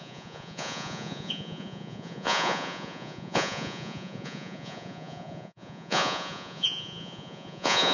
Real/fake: fake